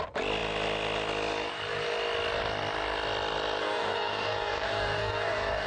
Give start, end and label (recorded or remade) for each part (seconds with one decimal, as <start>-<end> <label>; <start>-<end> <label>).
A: 0.0-3.6 recorded; 3.6-5.7 remade